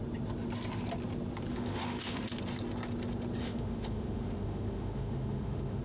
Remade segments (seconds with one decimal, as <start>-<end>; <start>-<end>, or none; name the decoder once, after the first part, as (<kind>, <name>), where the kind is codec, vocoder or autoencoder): 1.5-2.3 (autoencoder, DAC-VAE); 3.4-5.8